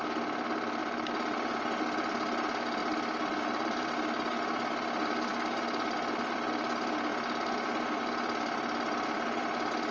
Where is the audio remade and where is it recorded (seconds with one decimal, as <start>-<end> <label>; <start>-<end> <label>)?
0.0-0.8 recorded; 0.8-1.8 remade; 1.8-2.8 recorded; 2.8-3.9 remade; 3.9-9.9 recorded